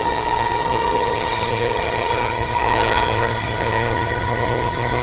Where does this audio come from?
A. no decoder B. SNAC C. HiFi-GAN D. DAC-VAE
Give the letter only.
C